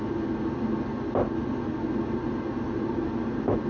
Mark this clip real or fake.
real